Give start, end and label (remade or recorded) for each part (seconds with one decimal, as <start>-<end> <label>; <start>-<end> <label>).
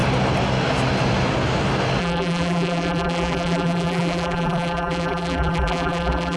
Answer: 0.0-2.0 recorded; 2.0-6.4 remade